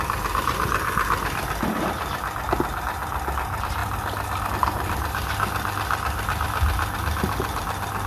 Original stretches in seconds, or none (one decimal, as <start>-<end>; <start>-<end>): 0.0-8.1